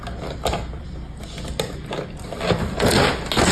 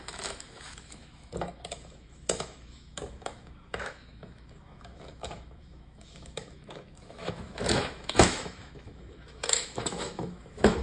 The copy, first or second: second